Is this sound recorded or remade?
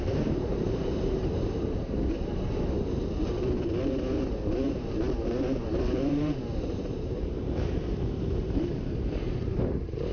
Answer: remade